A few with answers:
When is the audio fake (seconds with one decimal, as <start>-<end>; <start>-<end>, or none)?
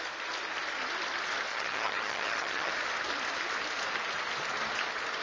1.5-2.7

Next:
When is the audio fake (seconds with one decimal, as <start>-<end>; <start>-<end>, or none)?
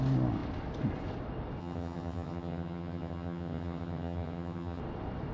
1.6-4.8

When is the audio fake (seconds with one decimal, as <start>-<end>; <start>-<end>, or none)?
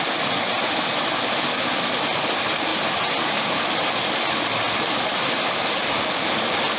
none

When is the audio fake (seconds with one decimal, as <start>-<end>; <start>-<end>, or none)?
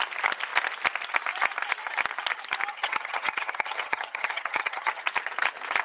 2.7-5.0